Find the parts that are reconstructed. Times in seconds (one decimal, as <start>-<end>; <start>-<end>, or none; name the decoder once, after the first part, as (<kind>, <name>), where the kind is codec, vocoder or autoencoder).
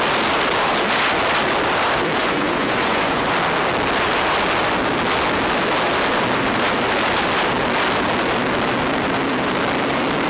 2.2-3.3 (vocoder, Vocos)